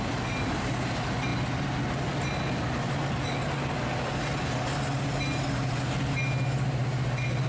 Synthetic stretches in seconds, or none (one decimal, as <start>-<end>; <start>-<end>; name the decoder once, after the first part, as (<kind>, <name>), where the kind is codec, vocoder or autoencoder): none